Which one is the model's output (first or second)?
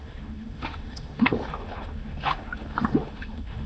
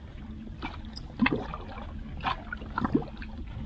first